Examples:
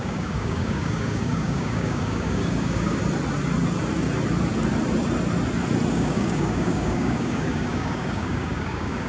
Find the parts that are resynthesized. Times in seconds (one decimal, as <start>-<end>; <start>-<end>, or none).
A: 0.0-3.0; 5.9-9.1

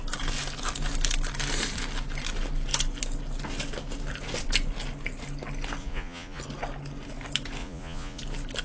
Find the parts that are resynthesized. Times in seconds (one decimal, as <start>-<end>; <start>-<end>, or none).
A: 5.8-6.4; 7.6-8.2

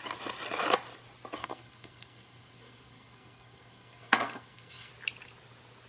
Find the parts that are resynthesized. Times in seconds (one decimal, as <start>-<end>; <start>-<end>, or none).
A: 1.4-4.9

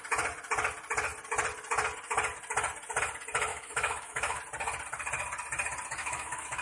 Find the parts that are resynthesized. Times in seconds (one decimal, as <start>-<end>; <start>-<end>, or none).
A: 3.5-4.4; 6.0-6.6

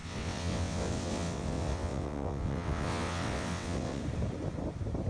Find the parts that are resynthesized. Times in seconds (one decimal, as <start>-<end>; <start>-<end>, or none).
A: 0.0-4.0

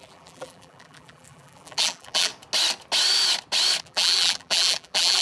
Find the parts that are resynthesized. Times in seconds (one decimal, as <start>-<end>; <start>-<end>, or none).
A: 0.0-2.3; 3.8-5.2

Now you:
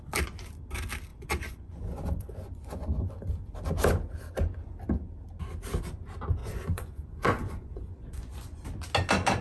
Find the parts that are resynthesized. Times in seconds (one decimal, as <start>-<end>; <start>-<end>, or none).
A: 1.1-3.1; 6.4-8.6